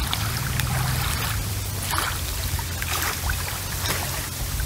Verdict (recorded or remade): recorded